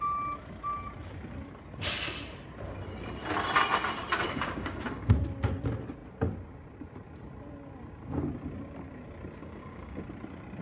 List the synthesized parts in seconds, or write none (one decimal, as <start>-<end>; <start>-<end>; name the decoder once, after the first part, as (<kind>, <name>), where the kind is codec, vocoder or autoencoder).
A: 4.2-5.1 (codec, DAC); 9.4-10.0